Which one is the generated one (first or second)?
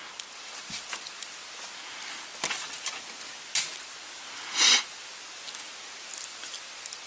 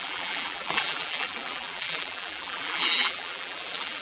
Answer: second